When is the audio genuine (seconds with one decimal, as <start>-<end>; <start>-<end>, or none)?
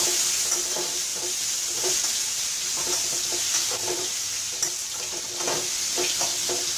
0.0-1.1; 5.2-6.8